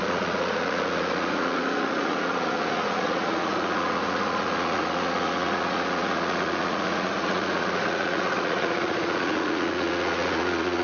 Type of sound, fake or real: fake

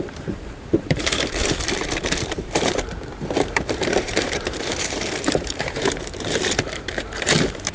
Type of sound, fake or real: fake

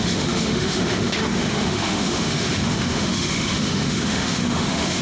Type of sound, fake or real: fake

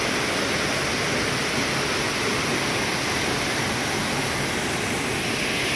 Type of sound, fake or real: real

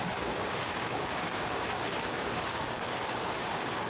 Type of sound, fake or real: fake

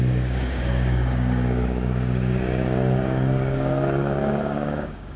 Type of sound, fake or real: fake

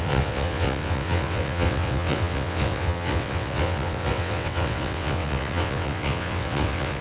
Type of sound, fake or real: fake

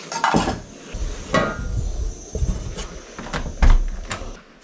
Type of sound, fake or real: real